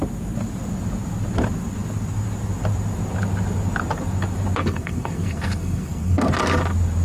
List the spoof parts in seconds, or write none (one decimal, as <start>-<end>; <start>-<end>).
4.6-6.3